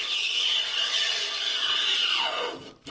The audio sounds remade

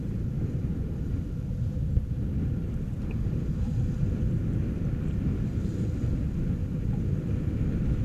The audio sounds recorded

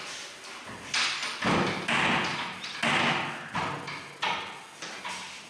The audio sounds recorded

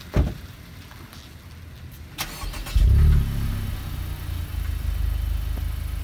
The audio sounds recorded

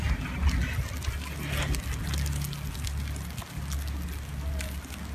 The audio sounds recorded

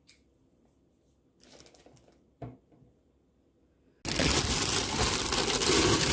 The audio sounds recorded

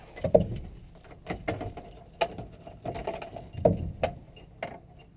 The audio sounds recorded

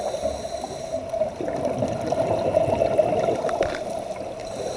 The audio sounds recorded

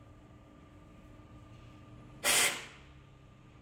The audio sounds recorded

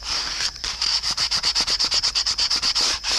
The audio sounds remade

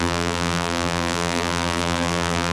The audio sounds remade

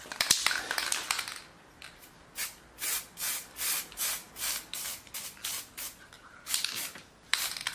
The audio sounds recorded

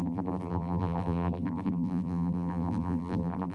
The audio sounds remade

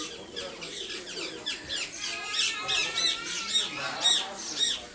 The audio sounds recorded